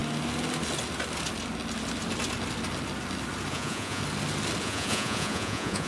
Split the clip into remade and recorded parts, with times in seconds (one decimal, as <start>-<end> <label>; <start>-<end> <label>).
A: 0.0-3.5 recorded; 3.5-4.0 remade; 4.0-4.6 recorded; 4.6-5.9 remade